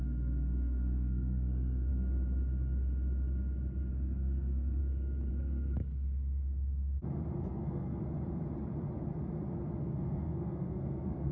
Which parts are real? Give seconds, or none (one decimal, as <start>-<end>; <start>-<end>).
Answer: 1.9-3.9; 4.8-5.3; 5.8-7.4; 8.0-9.8